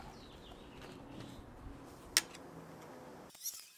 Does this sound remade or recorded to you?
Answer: recorded